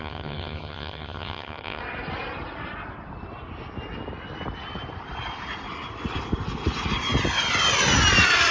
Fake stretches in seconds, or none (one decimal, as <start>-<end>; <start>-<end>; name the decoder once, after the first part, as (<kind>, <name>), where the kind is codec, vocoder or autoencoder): 0.0-1.8 (vocoder, HiFi-GAN)